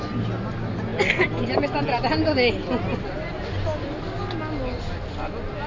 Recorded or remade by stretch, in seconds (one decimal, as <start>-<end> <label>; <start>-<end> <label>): 0.0-5.7 recorded